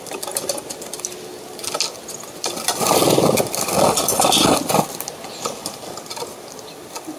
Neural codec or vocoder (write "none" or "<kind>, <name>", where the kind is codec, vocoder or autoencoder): none